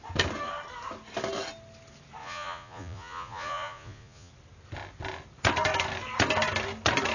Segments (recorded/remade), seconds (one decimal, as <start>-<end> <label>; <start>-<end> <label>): 0.0-2.2 recorded; 2.2-4.3 remade; 4.3-7.1 recorded